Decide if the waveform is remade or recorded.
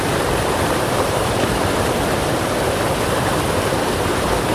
remade